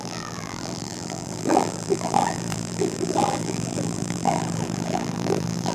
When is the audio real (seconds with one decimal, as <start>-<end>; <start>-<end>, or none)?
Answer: none